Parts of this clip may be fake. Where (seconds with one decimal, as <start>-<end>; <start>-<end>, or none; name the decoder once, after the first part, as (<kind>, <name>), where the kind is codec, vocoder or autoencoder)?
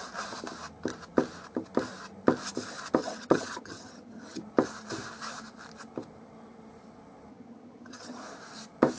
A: 3.0-4.4 (vocoder, HiFi-GAN); 7.3-8.2